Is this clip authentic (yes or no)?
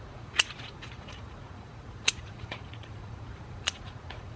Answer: no